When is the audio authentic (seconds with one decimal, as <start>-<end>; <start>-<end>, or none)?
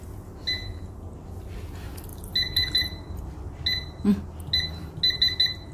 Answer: 0.0-5.7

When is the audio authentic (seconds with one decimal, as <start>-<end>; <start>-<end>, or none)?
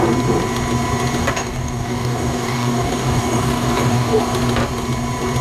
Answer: 0.0-1.2; 4.2-5.4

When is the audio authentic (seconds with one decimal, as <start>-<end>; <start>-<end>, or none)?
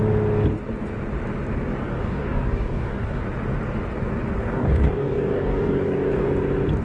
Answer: 0.0-1.9; 3.2-4.4; 6.3-6.8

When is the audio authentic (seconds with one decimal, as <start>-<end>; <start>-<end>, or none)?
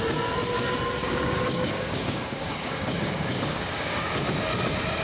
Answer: 0.0-1.0; 4.0-5.0